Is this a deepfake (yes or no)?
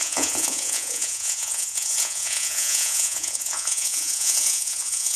yes